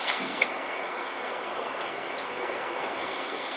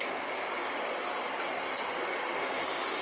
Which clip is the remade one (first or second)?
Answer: first